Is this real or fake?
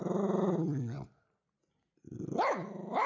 real